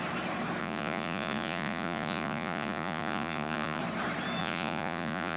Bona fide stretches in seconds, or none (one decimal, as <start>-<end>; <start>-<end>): 0.0-0.6; 3.8-4.4